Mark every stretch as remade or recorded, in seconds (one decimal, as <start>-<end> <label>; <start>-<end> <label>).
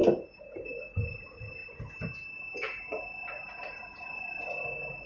0.0-5.1 recorded